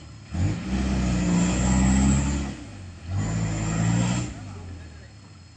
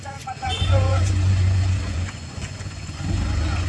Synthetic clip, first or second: second